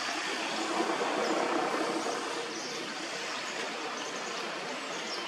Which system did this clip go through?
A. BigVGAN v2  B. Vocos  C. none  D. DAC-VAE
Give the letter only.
C